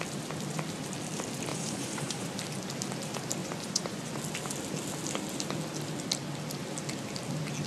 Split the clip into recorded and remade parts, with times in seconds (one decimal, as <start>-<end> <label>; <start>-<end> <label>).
0.0-1.5 recorded; 1.5-2.3 remade; 2.3-3.4 recorded; 3.4-4.2 remade; 4.2-7.7 recorded